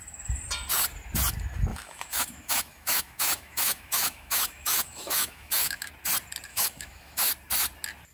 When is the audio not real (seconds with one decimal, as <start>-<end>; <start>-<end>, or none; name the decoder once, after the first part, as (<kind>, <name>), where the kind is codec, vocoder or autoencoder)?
1.7-5.9 (autoencoder, DAC-VAE); 6.5-7.3